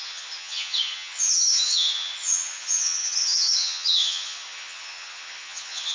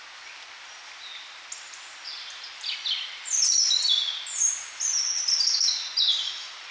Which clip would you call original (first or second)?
second